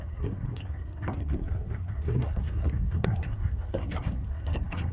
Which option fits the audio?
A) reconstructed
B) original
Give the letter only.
A